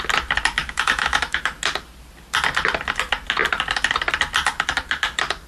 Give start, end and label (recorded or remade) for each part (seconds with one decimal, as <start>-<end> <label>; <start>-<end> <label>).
0.0-0.6 recorded; 0.6-1.4 remade; 1.4-5.5 recorded